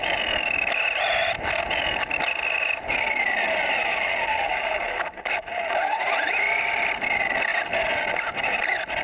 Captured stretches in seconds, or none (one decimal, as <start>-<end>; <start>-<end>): 0.0-4.3; 5.5-9.0

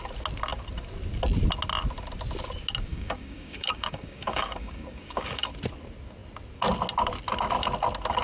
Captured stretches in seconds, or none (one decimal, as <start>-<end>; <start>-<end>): 0.0-2.9; 5.5-8.2

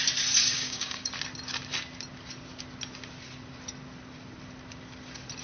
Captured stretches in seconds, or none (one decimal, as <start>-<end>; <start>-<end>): 0.0-0.4; 1.1-5.4

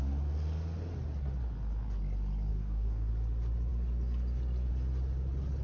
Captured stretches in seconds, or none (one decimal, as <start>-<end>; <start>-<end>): 0.0-2.5; 3.1-5.6

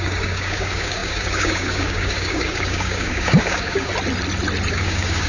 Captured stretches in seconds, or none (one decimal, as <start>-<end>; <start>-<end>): 3.9-4.7

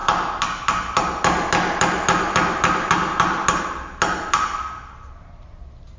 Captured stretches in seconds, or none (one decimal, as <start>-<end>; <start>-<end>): 0.0-6.0

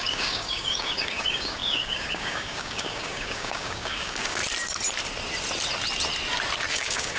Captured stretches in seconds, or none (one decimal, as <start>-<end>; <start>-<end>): 4.4-6.7

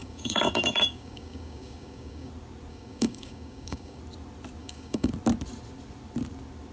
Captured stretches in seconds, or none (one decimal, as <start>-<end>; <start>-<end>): 2.3-2.7; 4.0-4.6; 5.1-6.7